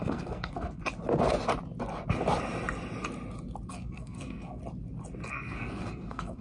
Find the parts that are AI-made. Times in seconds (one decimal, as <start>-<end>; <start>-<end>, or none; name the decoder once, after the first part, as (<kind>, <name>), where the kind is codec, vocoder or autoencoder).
0.0-0.8 (codec, SNAC); 3.7-4.6; 5.3-6.4